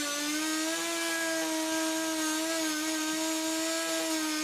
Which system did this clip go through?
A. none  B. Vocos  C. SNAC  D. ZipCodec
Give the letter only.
A